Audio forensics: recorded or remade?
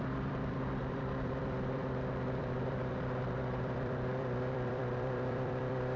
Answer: remade